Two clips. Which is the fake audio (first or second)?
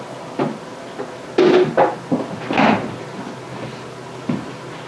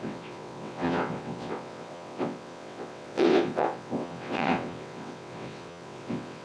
second